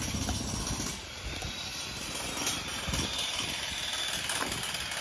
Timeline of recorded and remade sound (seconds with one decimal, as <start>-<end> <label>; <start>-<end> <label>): 0.0-2.7 recorded; 2.7-3.6 remade; 3.6-5.0 recorded